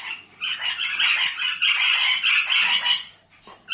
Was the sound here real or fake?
real